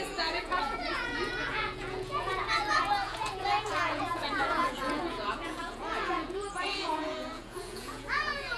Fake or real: fake